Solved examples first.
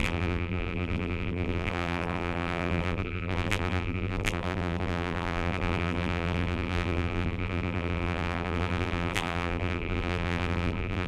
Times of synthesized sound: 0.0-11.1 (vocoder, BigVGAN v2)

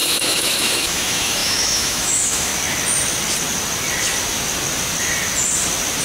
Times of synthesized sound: 0.0-2.5 (autoencoder, DAC-VAE)